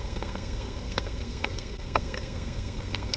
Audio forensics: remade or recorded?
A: remade